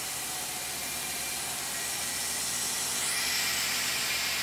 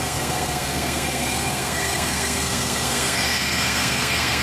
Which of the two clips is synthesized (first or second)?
second